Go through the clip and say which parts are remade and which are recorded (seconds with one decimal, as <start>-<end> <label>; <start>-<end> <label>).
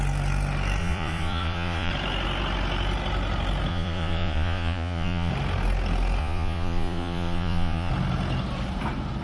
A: 0.0-0.8 recorded; 0.8-1.9 remade; 1.9-3.7 recorded; 3.7-5.3 remade; 5.3-6.2 recorded; 6.2-7.9 remade; 7.9-9.2 recorded